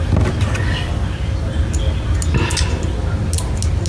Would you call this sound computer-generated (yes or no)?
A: no